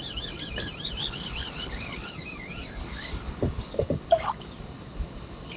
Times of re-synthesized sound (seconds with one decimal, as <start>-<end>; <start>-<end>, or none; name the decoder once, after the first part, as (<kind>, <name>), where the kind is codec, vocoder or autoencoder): 1.0-2.1 (codec, HILCodec); 2.8-5.6